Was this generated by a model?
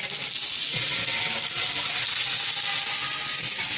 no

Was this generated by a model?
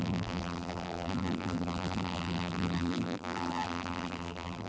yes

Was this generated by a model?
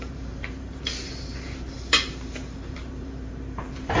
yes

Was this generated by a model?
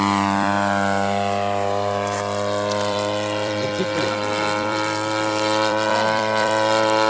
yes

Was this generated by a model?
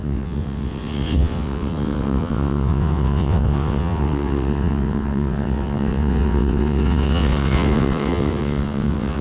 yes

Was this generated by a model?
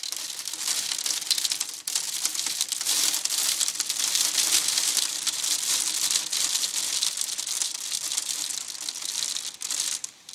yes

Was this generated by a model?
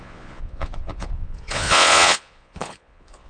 yes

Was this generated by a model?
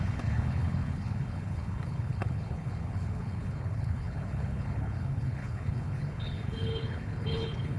yes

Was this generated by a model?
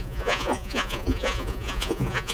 yes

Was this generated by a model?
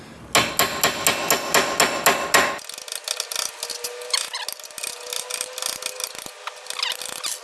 no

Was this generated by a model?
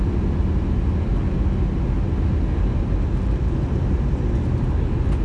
no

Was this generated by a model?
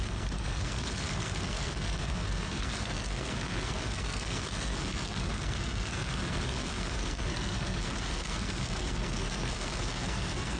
yes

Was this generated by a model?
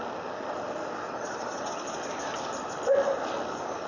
no